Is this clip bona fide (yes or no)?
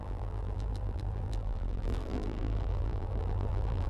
no